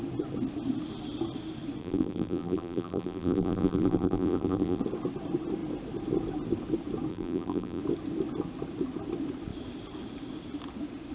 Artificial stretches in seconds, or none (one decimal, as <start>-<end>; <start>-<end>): 1.8-4.8; 7.1-7.8